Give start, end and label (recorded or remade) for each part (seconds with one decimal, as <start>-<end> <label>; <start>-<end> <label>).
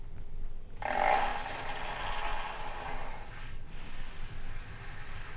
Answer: 0.0-5.4 recorded